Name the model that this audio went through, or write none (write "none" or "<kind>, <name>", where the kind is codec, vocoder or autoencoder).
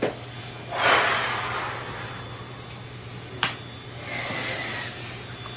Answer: none